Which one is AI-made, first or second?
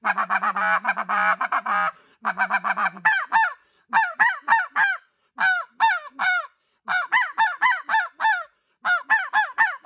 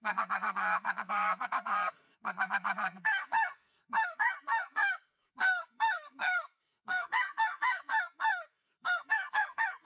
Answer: second